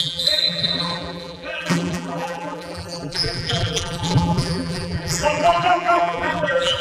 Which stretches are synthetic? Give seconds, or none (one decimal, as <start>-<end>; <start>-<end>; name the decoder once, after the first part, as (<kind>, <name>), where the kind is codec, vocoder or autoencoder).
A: 0.0-6.8 (vocoder, BigVGAN v2)